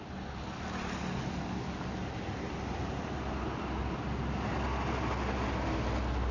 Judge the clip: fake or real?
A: real